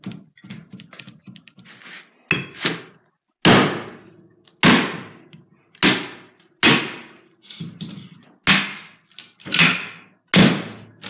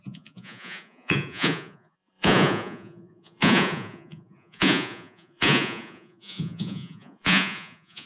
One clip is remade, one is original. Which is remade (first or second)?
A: second